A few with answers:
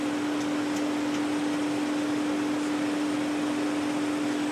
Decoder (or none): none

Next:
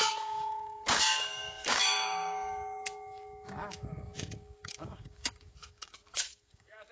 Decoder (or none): codec, DAC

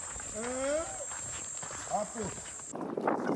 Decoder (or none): none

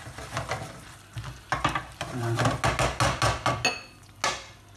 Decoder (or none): none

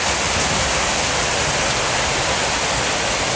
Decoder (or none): vocoder, BigVGAN v2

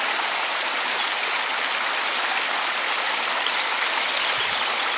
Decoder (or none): none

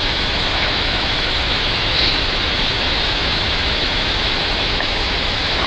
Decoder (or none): autoencoder, DAC-VAE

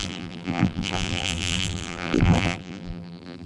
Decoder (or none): vocoder, BigVGAN v2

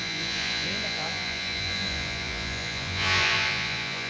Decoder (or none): vocoder, Vocos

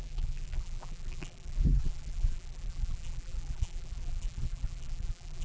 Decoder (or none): vocoder, BigVGAN v2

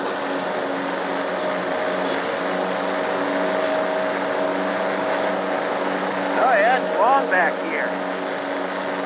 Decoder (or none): none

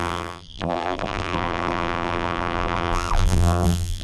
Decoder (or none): vocoder, BigVGAN v2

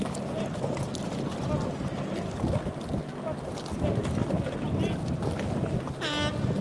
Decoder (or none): none